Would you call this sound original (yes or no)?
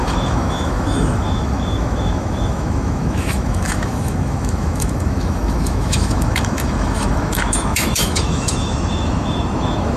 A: no